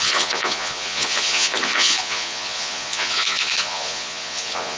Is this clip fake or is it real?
fake